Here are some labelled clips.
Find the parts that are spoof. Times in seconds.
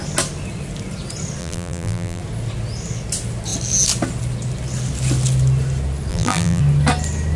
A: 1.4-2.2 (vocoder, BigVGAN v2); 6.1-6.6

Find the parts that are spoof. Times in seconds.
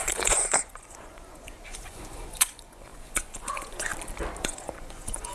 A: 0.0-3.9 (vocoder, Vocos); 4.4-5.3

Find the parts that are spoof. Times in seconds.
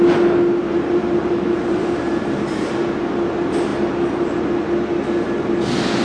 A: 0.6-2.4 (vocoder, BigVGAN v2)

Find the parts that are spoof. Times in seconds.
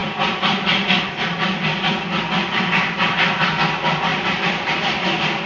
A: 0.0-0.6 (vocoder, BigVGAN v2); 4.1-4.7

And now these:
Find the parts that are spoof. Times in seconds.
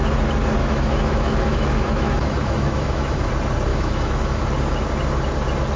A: 0.6-3.3 (autoencoder, DAC-VAE); 3.7-4.4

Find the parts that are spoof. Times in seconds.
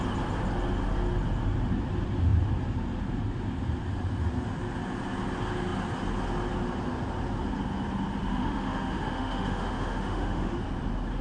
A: 8.3-10.6 (autoencoder, DAC-VAE)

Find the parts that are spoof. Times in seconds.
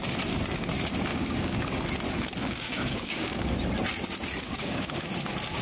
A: 1.1-1.6 (codec, DAC); 2.4-3.5; 4.5-5.1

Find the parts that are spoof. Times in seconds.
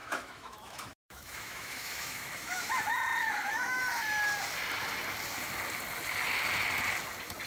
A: 0.0-2.7 (autoencoder, DAC-VAE); 3.2-3.8